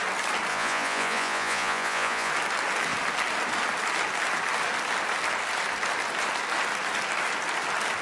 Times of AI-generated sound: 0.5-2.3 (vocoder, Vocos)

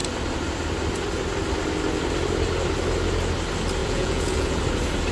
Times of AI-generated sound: 3.8-4.6 (vocoder, Vocos)

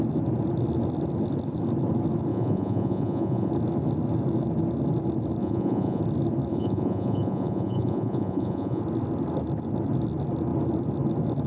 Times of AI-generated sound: 2.3-3.5 (vocoder, Vocos); 5.4-6.0; 6.5-8.8

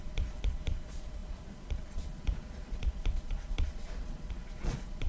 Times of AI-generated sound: 0.0-5.1 (vocoder, Vocos)

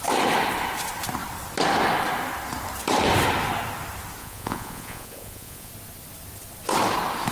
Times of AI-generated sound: 4.2-5.7 (vocoder, Vocos)

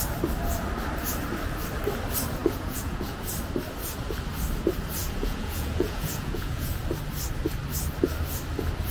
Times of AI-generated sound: 2.4-3.2 (vocoder, Vocos); 5.0-6.8

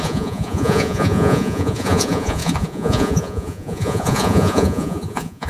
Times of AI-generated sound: 0.0-5.5 (vocoder, Vocos)